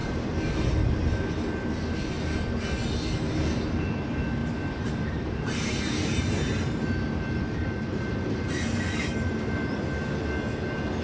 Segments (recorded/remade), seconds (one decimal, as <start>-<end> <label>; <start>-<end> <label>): 0.0-4.4 recorded; 4.4-6.3 remade; 6.3-7.6 recorded; 7.6-9.3 remade; 9.3-11.0 recorded

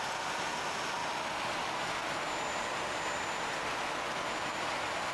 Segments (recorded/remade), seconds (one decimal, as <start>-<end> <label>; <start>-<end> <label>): 0.0-5.1 recorded